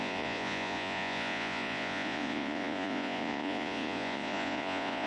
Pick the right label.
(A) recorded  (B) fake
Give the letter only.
B